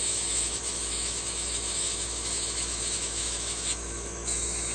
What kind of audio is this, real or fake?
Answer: fake